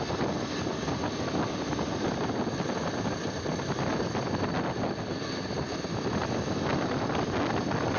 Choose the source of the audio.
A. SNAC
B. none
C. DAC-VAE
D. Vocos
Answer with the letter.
B